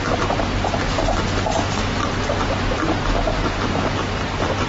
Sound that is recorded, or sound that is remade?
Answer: recorded